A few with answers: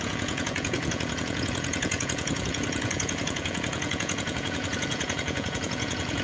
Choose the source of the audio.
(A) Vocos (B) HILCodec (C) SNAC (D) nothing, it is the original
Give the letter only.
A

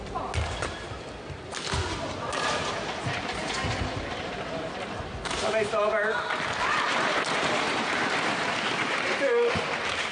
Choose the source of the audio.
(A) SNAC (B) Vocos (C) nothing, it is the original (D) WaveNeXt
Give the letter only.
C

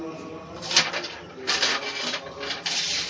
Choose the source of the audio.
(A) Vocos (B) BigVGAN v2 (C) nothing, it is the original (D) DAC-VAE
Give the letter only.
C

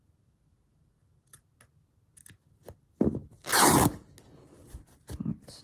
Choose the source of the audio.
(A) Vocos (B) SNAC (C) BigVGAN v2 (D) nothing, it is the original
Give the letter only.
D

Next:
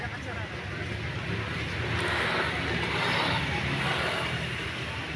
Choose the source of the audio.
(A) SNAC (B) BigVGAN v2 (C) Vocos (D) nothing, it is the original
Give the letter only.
D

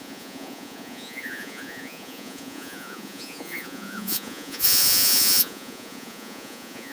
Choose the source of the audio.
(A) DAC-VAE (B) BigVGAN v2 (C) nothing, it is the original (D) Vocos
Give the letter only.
D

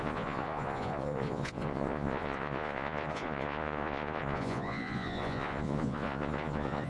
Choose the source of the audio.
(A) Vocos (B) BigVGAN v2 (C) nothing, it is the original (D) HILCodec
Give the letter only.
A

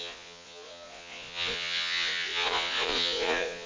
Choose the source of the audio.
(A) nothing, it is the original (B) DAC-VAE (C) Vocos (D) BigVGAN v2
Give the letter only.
C